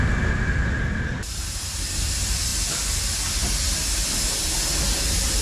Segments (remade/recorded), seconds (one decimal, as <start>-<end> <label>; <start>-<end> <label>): 0.0-5.4 recorded